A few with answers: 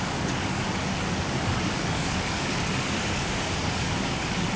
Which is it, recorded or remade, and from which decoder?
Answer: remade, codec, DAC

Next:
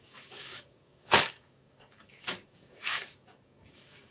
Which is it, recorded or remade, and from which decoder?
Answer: remade, codec, DAC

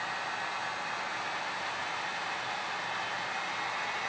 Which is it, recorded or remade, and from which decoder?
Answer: recorded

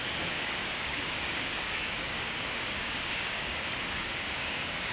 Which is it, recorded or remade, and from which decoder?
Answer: remade, codec, DAC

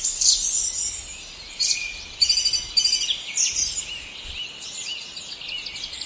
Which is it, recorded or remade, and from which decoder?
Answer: recorded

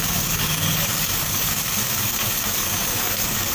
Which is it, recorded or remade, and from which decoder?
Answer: remade, codec, DAC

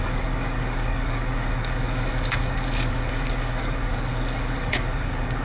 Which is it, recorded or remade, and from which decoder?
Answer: remade, codec, DAC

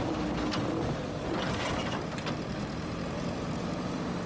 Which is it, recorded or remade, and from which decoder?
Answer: recorded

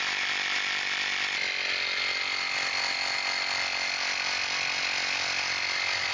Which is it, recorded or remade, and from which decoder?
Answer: recorded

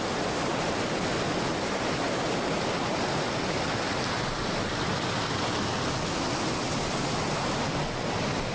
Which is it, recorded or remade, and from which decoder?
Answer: recorded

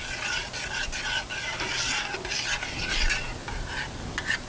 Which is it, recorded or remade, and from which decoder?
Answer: recorded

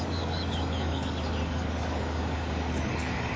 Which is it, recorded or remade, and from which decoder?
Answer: remade, codec, DAC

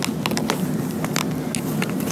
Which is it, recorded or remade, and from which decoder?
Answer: recorded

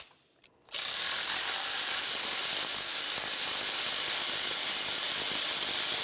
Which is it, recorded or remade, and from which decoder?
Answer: recorded